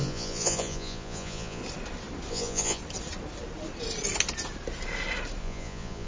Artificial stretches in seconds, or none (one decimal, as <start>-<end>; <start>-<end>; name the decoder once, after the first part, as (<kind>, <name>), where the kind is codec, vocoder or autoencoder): 0.0-1.6 (vocoder, Vocos); 2.3-2.8; 5.4-6.1